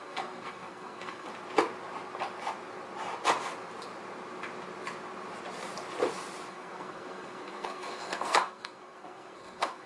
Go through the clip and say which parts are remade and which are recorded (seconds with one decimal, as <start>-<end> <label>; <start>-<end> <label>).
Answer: 0.0-1.3 remade; 1.3-6.5 recorded; 6.5-9.9 remade